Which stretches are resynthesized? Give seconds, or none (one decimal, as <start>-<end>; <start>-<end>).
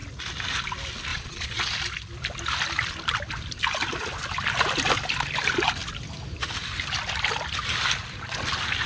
1.1-1.6